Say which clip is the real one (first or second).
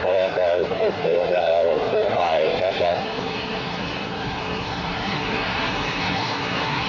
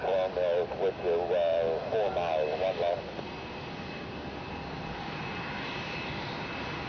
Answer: second